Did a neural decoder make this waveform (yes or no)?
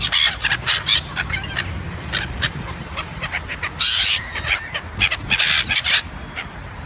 no